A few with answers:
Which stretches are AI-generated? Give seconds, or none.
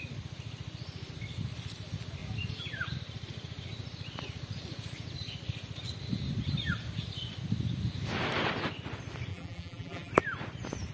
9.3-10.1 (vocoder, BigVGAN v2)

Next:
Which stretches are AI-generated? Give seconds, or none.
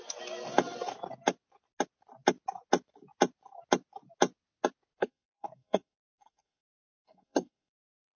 5.0-8.2 (codec, SNAC)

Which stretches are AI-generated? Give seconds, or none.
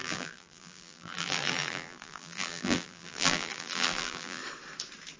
0.0-4.4 (vocoder, BigVGAN v2)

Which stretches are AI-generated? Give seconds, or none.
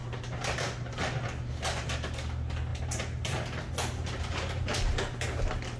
none